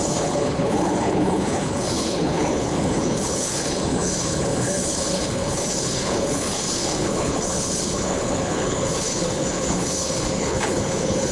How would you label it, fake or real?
fake